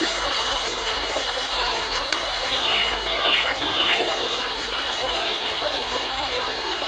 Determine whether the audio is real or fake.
fake